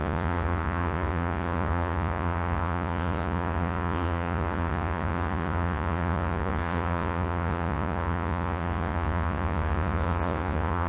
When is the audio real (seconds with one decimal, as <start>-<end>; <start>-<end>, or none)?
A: none